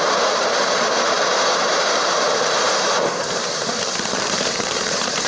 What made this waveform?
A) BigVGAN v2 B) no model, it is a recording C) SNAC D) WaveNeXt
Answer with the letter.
A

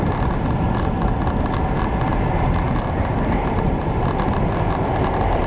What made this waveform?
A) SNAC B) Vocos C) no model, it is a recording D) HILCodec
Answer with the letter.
C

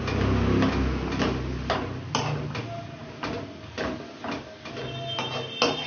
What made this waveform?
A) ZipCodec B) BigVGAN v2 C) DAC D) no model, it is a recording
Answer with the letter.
D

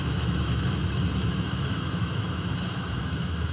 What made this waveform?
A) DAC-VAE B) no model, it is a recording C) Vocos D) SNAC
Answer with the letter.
A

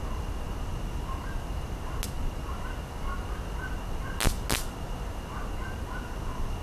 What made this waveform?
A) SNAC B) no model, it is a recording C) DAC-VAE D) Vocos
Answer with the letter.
B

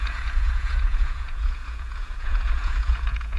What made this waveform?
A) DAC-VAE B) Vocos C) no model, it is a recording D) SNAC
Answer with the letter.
B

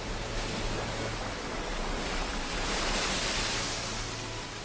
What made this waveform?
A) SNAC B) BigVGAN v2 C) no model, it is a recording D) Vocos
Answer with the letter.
C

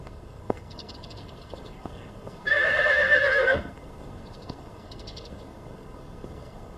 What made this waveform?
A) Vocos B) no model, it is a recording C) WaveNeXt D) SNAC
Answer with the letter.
D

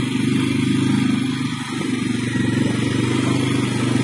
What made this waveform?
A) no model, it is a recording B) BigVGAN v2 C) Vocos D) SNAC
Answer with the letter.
A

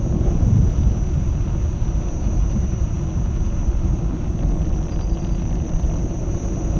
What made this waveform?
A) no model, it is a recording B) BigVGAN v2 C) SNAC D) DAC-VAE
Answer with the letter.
A